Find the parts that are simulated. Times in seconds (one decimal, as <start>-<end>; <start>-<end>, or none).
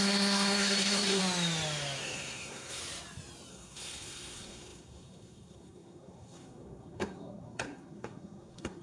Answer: 0.0-1.2; 2.0-2.8; 3.5-8.8